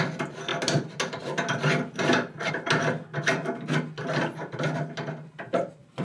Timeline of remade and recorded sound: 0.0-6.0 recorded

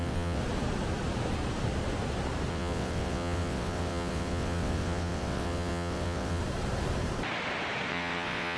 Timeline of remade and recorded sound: 0.0-0.4 remade; 0.4-2.5 recorded; 2.5-6.4 remade; 6.4-7.9 recorded; 7.9-8.6 remade

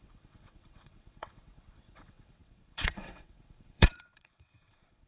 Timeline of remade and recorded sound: 0.0-5.1 remade